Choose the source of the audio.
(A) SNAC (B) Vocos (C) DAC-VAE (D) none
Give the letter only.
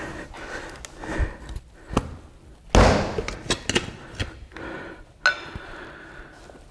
D